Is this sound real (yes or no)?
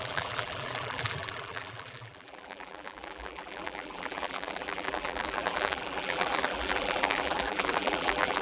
no